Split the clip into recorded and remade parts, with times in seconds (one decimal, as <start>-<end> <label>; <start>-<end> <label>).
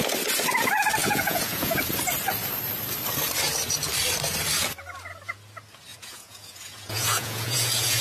0.0-1.0 recorded; 1.0-1.8 remade; 1.8-5.9 recorded; 5.9-8.0 remade